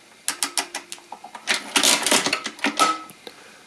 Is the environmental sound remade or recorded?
recorded